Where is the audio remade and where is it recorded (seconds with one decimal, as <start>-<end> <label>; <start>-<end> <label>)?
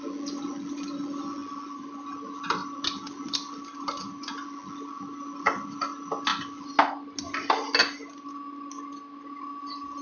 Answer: 0.0-10.0 recorded